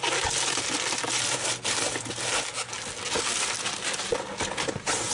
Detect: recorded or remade recorded